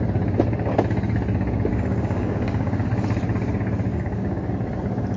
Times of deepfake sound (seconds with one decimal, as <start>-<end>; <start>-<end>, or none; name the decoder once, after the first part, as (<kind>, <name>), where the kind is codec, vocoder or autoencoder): 1.7-2.9 (codec, DAC); 3.9-4.5